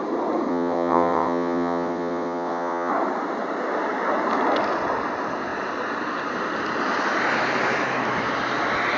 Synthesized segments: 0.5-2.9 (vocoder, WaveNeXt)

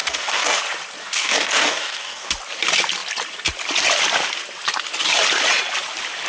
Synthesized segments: 0.0-0.6 (codec, DAC); 1.0-2.3

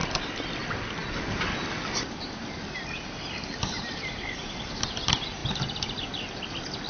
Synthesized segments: none

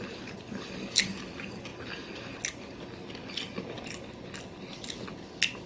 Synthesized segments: none

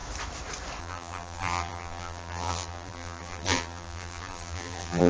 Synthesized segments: 0.8-5.1 (vocoder, BigVGAN v2)

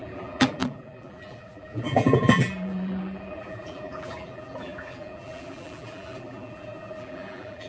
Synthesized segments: 0.0-7.7 (vocoder, BigVGAN v2)

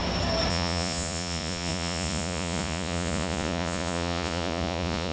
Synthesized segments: 0.5-5.1 (vocoder, Vocos)

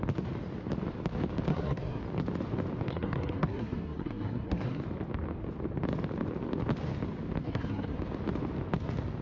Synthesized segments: 1.5-2.0 (codec, SNAC); 2.9-4.8; 7.4-8.0